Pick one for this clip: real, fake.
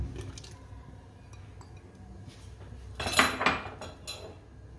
real